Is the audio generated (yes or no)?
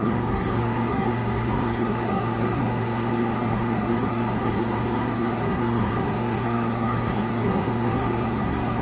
yes